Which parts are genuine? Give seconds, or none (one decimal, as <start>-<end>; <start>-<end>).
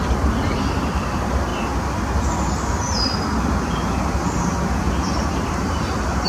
1.5-4.9